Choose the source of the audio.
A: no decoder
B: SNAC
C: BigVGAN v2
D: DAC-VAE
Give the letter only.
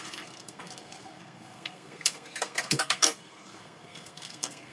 B